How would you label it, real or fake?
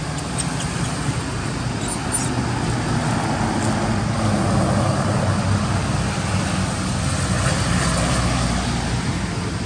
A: real